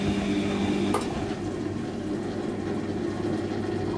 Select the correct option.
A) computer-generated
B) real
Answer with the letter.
B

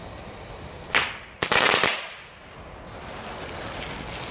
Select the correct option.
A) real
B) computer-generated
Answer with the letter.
A